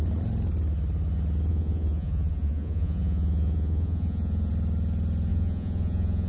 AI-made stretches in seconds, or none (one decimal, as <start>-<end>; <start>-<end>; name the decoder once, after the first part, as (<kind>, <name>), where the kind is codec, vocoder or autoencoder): 1.5-4.5 (vocoder, Vocos); 5.3-6.3